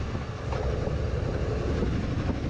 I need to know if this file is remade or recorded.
recorded